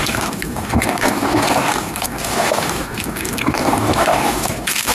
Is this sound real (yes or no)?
no